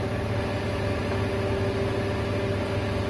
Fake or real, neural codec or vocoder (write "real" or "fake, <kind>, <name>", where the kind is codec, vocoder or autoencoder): real